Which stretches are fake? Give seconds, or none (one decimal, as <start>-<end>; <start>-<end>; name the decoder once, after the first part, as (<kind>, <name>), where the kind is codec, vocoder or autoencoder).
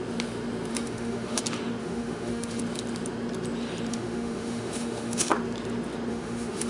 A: 0.7-1.4 (autoencoder, DAC-VAE); 1.8-2.6; 3.9-5.3; 6.1-6.7